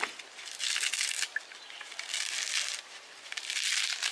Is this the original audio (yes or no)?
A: yes